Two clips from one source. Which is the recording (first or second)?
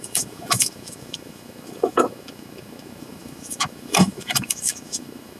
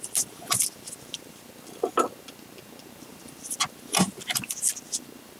second